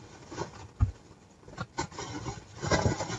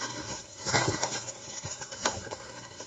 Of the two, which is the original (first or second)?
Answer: first